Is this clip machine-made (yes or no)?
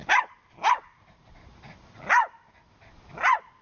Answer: no